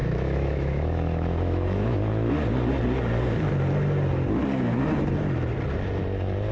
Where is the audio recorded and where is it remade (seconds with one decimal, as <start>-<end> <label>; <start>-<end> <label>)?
0.0-2.3 remade; 2.3-6.5 recorded

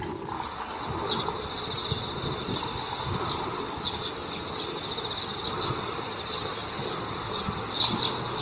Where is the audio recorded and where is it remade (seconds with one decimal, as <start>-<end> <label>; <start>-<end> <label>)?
0.0-8.4 recorded

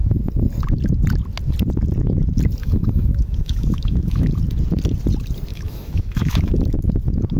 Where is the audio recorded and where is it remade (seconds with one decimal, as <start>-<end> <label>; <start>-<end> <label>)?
0.0-2.6 recorded; 2.6-4.3 remade; 4.3-5.5 recorded; 5.5-6.6 remade; 6.6-7.4 recorded

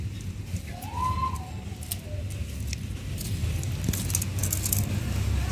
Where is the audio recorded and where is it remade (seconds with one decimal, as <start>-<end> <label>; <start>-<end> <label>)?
0.0-5.5 recorded

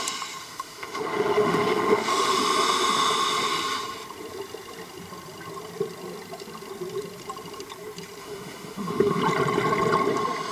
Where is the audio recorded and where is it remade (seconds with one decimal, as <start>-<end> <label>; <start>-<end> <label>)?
0.0-0.4 recorded; 0.4-2.4 remade; 2.4-8.2 recorded; 8.2-9.2 remade; 9.2-10.5 recorded

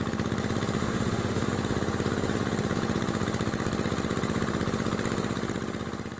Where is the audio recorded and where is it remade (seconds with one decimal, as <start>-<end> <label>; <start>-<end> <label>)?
0.0-0.8 recorded; 0.8-1.5 remade; 1.5-6.2 recorded

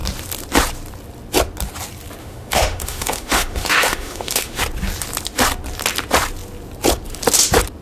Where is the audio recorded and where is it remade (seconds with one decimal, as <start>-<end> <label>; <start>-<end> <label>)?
0.0-2.2 recorded; 2.2-4.6 remade; 4.6-7.8 recorded